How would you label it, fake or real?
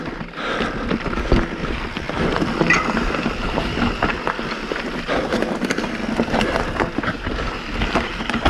real